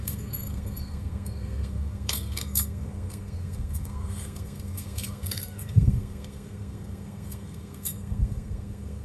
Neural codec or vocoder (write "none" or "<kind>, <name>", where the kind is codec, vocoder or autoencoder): codec, SNAC